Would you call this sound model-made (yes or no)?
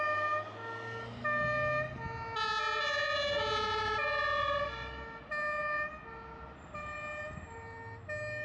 no